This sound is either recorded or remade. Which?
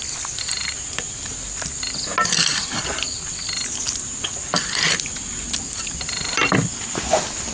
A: recorded